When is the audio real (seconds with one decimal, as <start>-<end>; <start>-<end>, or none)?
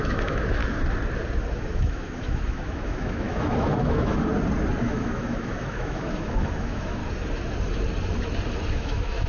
0.6-1.4; 4.3-4.8; 7.0-8.7